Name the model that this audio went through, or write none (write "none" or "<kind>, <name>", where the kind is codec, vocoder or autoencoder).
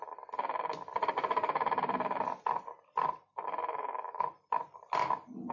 none